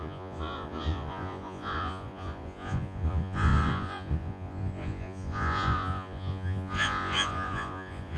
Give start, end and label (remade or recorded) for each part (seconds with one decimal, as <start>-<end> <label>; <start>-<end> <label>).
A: 0.0-8.2 remade